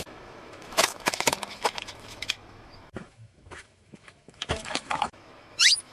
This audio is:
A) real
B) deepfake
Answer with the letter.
B